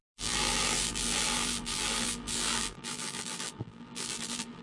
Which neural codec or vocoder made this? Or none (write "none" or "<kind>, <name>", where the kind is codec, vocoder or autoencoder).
vocoder, BigVGAN v2